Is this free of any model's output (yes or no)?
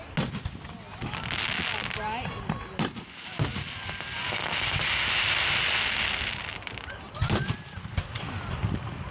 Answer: yes